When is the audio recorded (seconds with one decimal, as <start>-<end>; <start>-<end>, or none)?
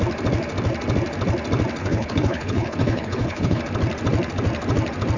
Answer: 0.0-1.8; 3.6-5.2